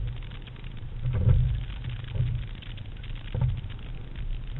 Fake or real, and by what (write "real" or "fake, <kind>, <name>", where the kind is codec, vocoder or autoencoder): real